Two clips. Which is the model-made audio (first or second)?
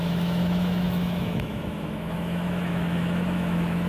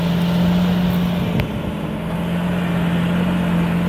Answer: first